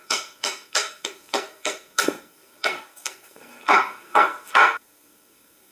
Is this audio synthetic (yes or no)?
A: yes